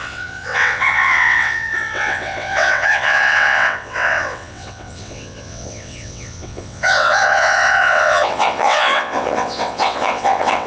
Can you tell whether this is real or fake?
fake